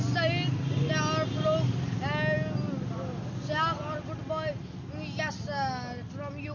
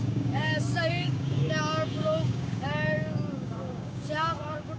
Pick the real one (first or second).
first